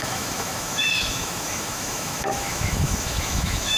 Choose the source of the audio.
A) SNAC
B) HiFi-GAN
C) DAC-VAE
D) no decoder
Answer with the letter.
C